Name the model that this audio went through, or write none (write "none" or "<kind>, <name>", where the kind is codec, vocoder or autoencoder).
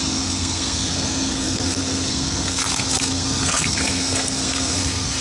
codec, SNAC